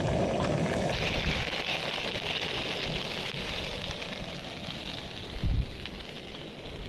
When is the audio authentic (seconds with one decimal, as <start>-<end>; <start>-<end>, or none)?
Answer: 0.0-6.9